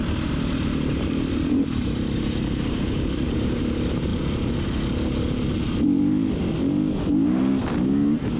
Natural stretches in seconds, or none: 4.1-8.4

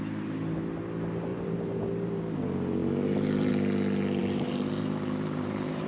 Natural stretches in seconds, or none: 0.0-1.3; 1.8-4.2

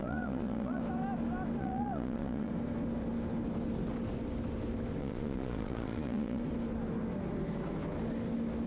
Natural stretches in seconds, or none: 0.8-1.6; 2.5-5.0; 6.4-8.7

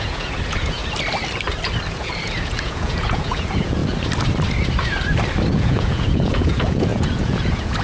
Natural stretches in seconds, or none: 0.8-1.9; 3.8-5.5

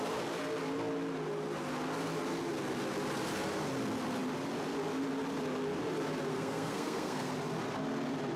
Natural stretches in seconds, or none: 0.0-6.3; 7.3-8.4

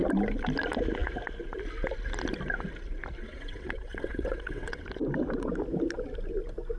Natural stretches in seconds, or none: 0.0-3.2; 4.8-6.8

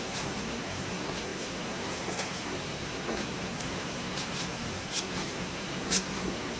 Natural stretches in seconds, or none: none

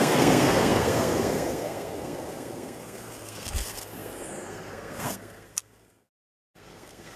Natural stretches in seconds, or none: none